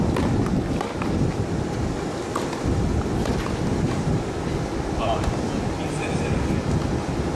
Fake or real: real